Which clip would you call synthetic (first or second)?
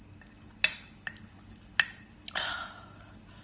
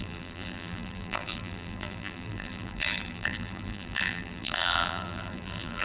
second